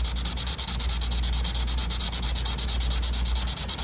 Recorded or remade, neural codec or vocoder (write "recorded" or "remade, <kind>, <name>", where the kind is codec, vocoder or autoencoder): recorded